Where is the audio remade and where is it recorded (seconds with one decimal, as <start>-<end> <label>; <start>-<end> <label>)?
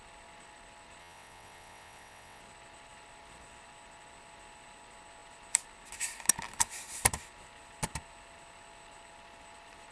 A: 0.0-1.0 recorded; 1.0-2.4 remade; 2.4-9.9 recorded